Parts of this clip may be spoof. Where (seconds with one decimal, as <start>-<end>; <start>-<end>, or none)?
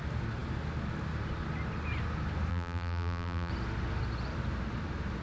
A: 2.5-3.5